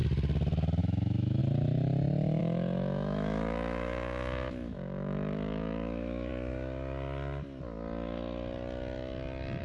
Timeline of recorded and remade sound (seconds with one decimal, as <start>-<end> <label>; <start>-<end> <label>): 0.0-0.8 recorded; 0.8-1.4 remade; 1.4-2.4 recorded; 2.4-6.3 remade; 6.3-9.6 recorded